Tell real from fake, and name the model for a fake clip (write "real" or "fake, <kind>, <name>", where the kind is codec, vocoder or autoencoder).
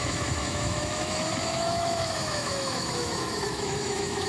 fake, autoencoder, DAC-VAE